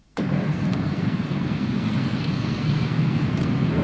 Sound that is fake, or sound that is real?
fake